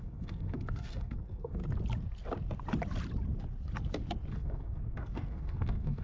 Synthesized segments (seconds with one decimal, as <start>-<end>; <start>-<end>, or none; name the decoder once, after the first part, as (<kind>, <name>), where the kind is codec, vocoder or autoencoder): 0.0-1.6 (codec, SNAC); 4.3-6.0